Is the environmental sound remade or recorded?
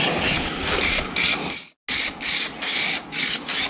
recorded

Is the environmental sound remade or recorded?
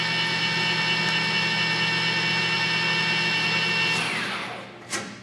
recorded